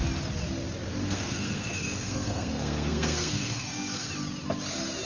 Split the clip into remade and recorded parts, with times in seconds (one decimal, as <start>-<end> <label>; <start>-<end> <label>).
0.0-1.0 recorded; 1.0-4.1 remade; 4.1-5.1 recorded